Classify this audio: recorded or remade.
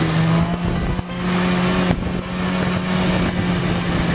recorded